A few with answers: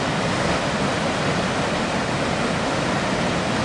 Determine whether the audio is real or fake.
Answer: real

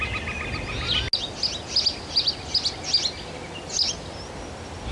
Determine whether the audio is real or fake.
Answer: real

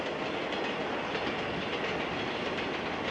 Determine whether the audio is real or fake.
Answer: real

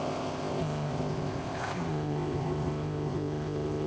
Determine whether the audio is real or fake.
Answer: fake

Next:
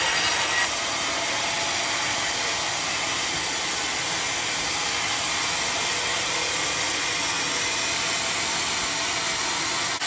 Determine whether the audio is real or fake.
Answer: real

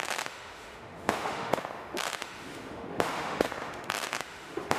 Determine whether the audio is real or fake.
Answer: fake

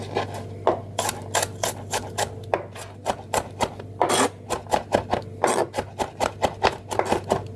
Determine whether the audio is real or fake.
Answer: real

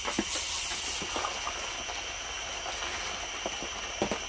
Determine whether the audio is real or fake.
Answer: real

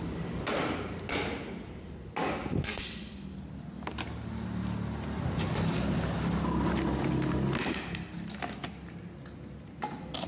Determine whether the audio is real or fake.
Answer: real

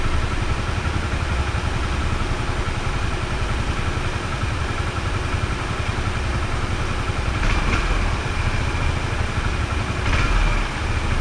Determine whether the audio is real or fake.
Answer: real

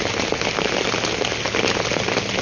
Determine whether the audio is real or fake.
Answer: real